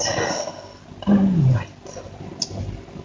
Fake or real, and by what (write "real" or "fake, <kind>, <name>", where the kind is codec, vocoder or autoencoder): real